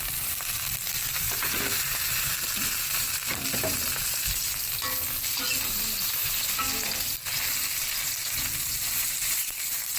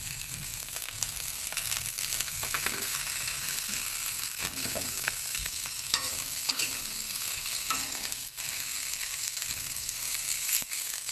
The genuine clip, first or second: first